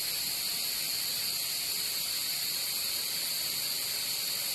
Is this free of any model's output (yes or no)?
yes